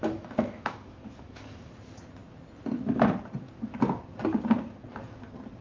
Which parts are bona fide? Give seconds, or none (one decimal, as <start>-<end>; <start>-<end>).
1.7-5.6